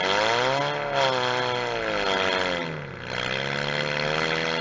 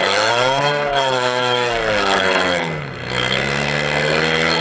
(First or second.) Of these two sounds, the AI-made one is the second